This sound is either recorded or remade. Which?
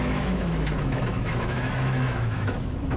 remade